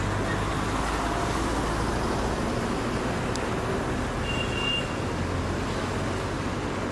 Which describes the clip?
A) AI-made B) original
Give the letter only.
B